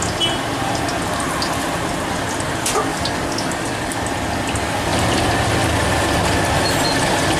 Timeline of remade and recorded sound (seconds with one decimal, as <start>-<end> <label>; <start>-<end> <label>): 0.0-2.9 recorded; 2.9-4.0 remade; 4.0-7.4 recorded

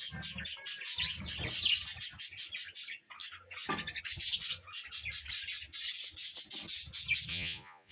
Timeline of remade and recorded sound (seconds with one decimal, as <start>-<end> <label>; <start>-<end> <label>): 0.0-7.3 recorded; 7.3-7.9 remade

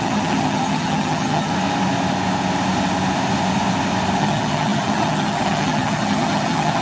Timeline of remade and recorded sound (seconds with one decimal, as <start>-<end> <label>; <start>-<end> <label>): 0.0-1.5 remade; 1.5-4.2 recorded; 4.2-6.8 remade

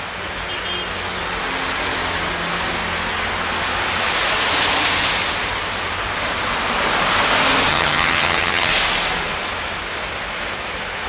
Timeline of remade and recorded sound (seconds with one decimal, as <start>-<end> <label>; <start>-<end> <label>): 0.0-7.7 recorded; 7.7-8.7 remade; 8.7-11.1 recorded

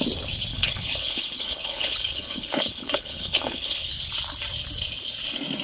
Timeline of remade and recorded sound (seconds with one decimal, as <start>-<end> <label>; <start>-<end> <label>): 0.0-0.5 recorded; 0.5-3.9 remade; 3.9-5.6 recorded

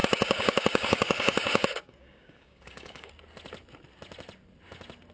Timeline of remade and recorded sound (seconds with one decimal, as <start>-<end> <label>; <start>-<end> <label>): 0.0-3.1 remade; 3.1-5.1 recorded

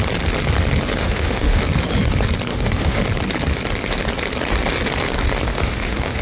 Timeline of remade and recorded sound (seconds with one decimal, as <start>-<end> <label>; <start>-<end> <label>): 0.0-1.0 recorded; 1.0-1.6 remade; 1.6-2.5 recorded; 2.5-3.0 remade; 3.0-5.5 recorded; 5.5-6.2 remade

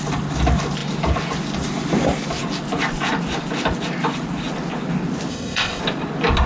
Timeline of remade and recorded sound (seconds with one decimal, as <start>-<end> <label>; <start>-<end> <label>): 0.0-5.3 recorded; 5.3-5.8 remade; 5.8-6.5 recorded